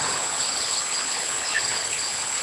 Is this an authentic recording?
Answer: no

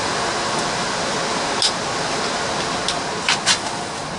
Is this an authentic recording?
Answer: yes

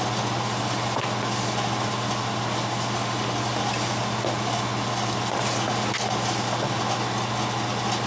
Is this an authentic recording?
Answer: yes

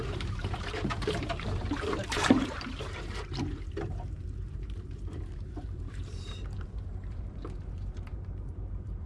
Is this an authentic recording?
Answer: no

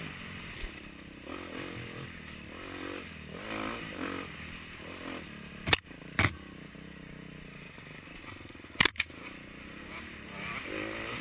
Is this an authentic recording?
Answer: yes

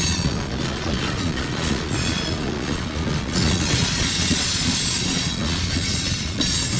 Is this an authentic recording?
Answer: no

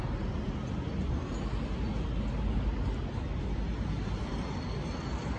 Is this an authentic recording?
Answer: yes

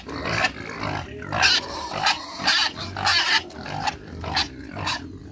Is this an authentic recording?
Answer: yes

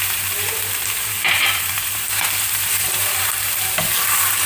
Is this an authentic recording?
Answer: no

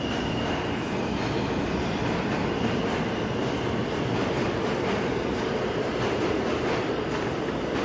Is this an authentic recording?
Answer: yes